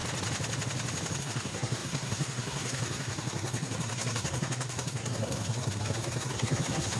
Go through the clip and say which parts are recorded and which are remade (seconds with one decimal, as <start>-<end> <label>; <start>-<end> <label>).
0.0-1.2 recorded; 1.2-7.0 remade